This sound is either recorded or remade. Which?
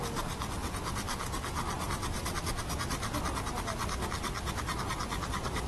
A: recorded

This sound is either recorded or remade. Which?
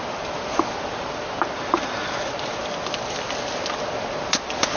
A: recorded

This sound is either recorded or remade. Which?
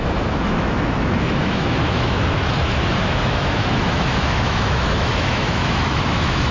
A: remade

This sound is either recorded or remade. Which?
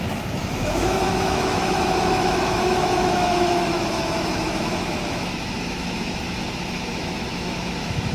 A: remade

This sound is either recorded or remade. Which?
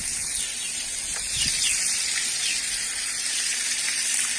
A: recorded